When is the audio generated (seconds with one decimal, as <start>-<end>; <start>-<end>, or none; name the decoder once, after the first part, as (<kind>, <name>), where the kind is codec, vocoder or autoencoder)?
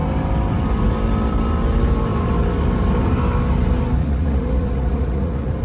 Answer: 4.0-5.6 (vocoder, Vocos)